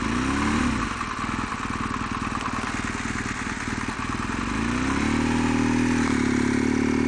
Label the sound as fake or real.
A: real